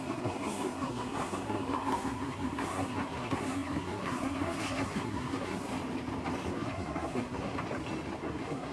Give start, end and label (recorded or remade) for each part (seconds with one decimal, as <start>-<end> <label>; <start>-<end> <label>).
0.0-5.7 remade; 5.7-6.5 recorded; 6.5-7.6 remade; 7.6-8.2 recorded; 8.2-8.7 remade